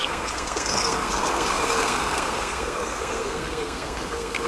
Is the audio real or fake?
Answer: fake